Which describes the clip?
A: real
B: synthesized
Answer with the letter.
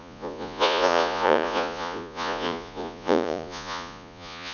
B